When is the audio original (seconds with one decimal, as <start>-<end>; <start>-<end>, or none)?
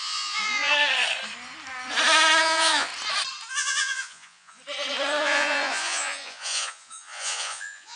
0.7-2.4; 2.9-3.5; 4.6-5.2